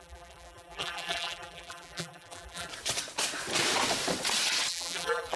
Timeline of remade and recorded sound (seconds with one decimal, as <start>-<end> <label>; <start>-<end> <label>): 0.0-2.7 remade; 2.7-4.7 recorded; 4.7-5.4 remade